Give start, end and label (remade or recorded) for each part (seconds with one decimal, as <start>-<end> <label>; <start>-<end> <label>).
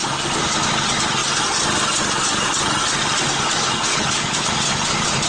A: 0.0-3.9 recorded; 3.9-4.5 remade; 4.5-5.3 recorded